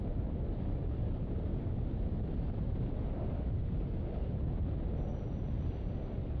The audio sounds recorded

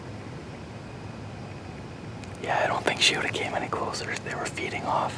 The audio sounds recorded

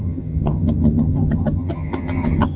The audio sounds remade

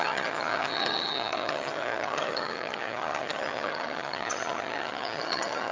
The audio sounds remade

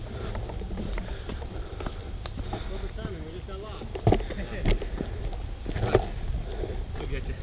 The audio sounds recorded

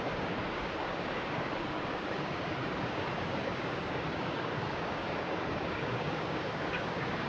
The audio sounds remade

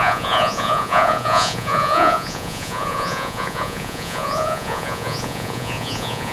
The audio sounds remade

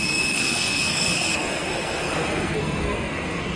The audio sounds remade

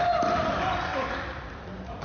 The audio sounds recorded